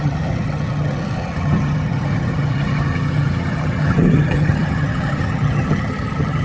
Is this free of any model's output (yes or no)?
no